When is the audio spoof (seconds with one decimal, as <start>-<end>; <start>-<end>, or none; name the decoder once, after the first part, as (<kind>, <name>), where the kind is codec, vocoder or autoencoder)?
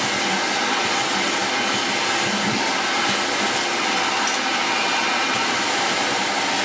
none